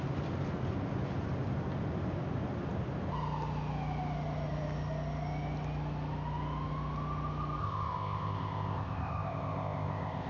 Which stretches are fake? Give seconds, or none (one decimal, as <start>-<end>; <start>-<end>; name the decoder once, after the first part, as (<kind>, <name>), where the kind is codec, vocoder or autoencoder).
7.6-10.3 (codec, ZipCodec)